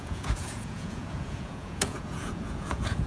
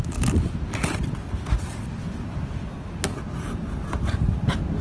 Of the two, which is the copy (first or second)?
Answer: first